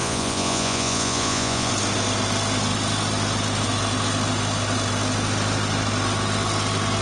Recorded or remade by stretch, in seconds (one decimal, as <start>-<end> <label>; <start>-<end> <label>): 0.0-1.7 remade; 1.7-7.0 recorded